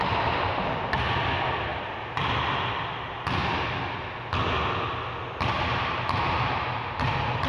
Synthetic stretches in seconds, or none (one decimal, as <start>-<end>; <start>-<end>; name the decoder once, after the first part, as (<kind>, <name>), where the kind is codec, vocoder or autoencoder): none